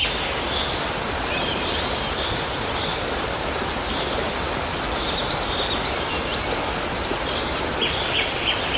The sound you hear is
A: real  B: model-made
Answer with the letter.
A